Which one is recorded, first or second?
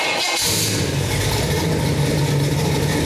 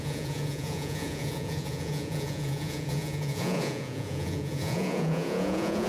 first